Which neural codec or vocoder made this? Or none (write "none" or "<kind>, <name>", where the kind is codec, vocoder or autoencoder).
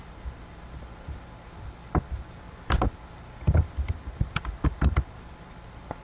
vocoder, BigVGAN v2